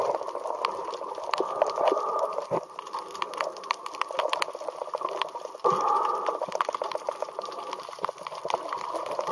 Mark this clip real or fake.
real